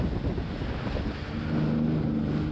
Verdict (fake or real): real